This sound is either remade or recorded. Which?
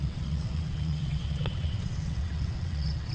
remade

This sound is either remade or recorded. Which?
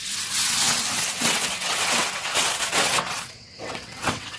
remade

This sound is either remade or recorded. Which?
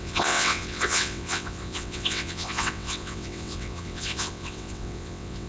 remade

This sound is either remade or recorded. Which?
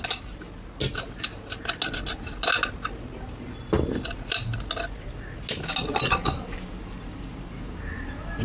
recorded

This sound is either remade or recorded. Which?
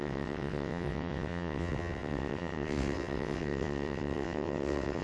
remade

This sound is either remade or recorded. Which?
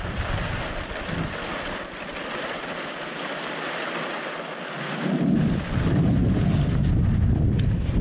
recorded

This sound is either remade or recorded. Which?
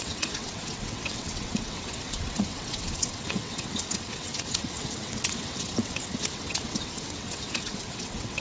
remade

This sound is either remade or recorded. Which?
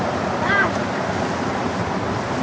recorded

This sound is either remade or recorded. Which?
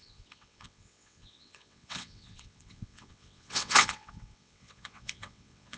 remade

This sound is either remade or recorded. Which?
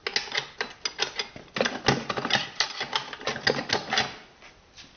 recorded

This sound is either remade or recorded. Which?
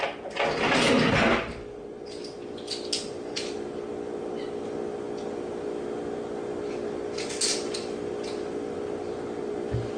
recorded